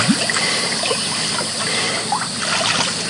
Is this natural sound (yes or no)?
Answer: yes